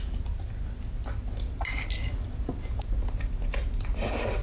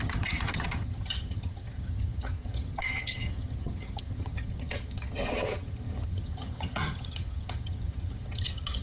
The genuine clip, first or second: first